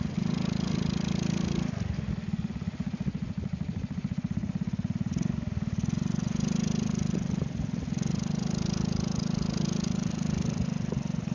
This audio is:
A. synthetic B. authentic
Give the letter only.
B